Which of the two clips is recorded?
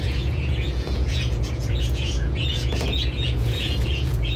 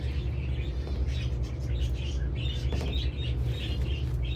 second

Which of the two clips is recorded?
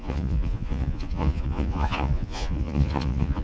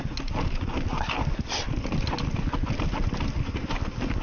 second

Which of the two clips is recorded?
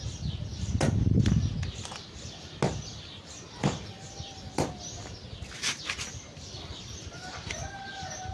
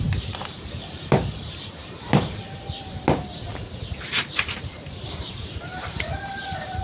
first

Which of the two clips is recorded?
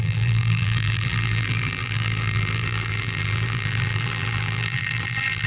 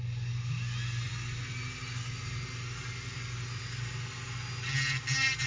second